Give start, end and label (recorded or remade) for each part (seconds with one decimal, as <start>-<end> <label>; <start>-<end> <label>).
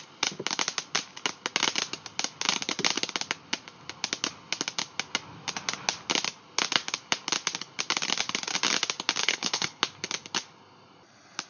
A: 0.0-9.2 recorded; 9.2-9.8 remade; 9.8-11.5 recorded